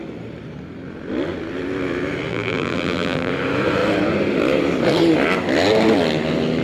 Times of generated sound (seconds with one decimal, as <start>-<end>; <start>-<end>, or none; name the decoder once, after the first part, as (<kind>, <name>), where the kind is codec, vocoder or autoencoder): 2.3-3.3 (vocoder, BigVGAN v2)